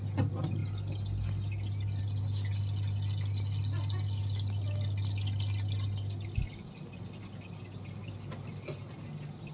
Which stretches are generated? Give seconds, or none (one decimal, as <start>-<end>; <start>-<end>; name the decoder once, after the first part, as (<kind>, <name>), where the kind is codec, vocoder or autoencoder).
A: none